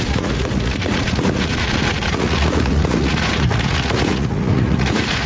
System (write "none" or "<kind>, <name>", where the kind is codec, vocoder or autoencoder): vocoder, Vocos